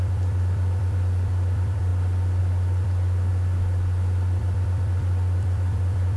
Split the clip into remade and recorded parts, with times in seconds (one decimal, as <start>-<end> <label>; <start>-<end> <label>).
0.0-1.9 remade; 1.9-2.4 recorded; 2.4-3.3 remade; 3.3-4.4 recorded; 4.4-6.2 remade